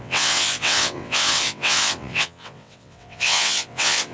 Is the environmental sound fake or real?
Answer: fake